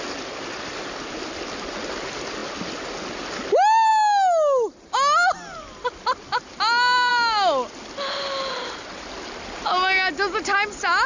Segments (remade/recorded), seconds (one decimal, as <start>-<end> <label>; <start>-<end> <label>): 0.0-11.1 recorded